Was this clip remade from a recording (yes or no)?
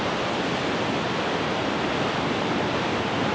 no